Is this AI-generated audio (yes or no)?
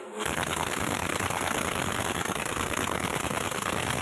yes